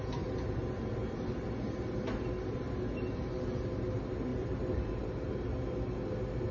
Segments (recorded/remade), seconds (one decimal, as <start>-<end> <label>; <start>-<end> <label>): 0.0-4.3 recorded; 4.3-4.9 remade; 4.9-6.5 recorded